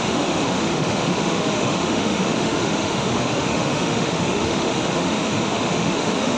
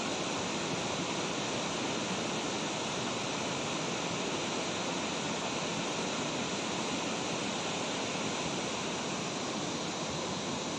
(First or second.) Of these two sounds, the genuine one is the second